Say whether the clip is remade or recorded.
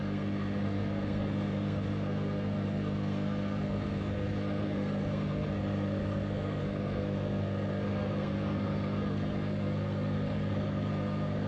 remade